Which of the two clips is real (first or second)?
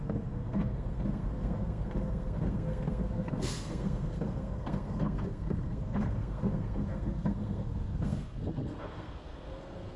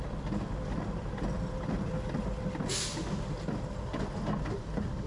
second